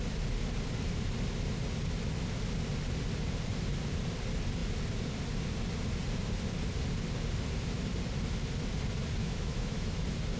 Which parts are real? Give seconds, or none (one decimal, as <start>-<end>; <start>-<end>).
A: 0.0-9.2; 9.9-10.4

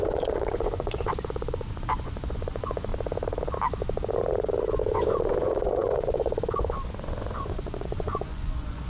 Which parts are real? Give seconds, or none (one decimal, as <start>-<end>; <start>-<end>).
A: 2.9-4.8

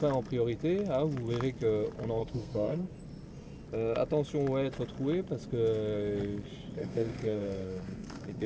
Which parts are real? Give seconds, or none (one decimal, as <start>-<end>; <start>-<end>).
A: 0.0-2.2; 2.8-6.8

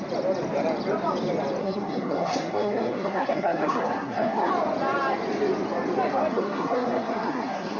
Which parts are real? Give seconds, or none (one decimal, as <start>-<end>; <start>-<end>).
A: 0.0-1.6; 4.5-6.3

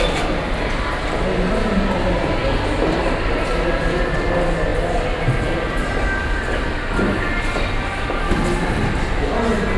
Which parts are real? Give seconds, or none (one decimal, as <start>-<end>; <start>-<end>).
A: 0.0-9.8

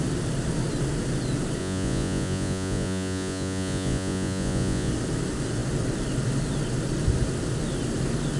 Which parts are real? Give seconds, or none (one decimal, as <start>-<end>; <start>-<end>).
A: 0.0-1.6; 4.9-8.4